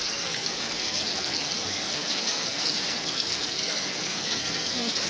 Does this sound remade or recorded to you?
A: remade